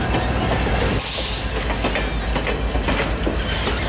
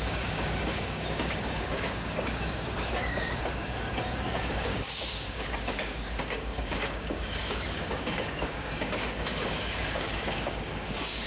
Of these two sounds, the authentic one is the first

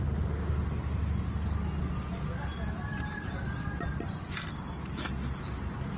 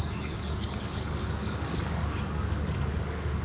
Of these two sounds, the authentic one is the first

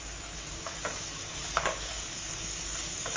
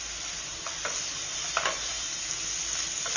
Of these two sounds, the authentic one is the second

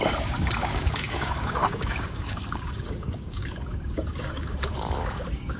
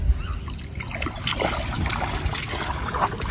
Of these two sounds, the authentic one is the second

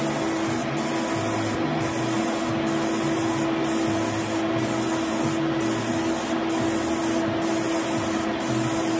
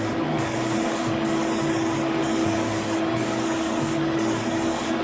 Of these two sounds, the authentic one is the first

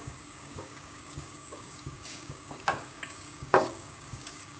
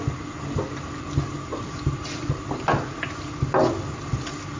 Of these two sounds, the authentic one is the second